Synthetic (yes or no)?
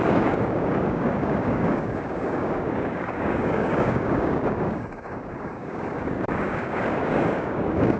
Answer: yes